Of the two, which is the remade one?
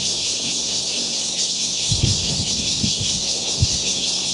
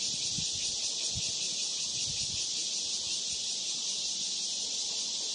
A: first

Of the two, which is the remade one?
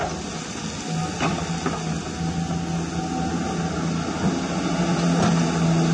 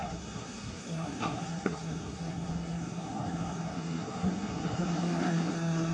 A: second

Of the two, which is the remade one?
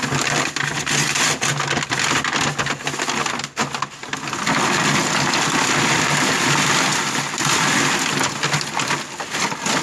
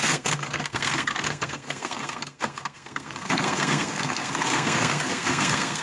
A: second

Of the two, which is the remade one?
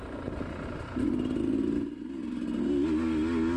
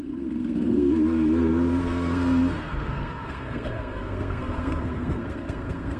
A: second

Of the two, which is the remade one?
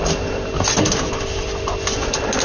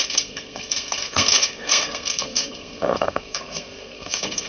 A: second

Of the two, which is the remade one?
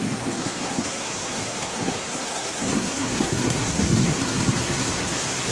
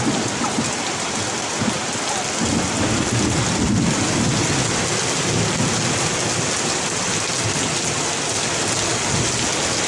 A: first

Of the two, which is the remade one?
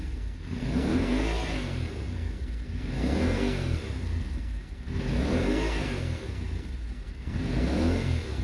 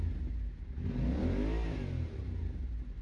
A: first